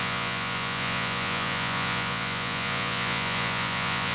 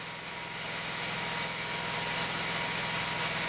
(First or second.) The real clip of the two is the second